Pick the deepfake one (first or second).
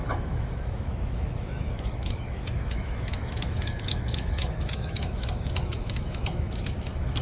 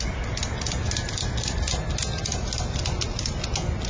first